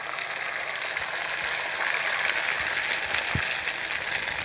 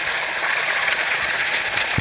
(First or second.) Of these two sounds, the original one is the first